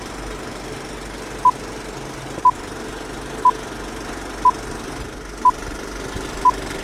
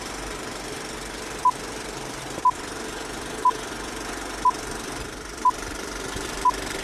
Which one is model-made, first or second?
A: second